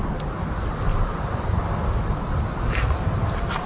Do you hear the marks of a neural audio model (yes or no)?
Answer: no